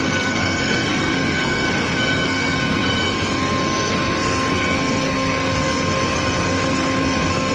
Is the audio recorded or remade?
remade